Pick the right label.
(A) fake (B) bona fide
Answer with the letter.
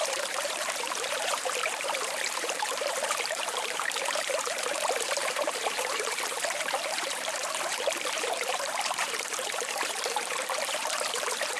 A